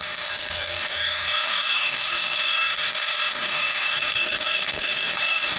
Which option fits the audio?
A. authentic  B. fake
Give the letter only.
B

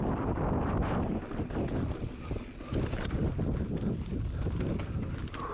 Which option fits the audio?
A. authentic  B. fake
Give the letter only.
A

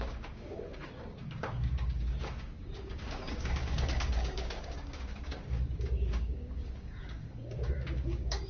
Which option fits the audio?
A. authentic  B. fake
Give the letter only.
B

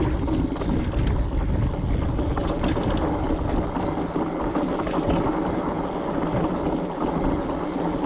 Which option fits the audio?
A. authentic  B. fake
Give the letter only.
A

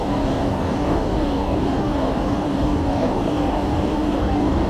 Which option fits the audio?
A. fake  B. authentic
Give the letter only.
A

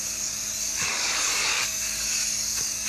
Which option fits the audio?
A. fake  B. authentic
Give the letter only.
A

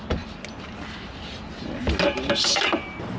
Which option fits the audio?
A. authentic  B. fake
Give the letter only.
A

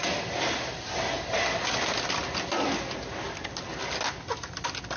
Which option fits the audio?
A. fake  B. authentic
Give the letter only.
B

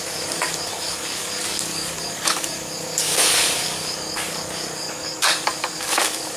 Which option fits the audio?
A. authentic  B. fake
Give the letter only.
B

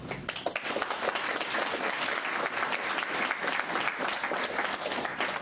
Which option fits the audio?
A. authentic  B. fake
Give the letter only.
A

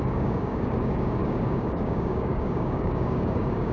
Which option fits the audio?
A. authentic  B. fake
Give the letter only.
B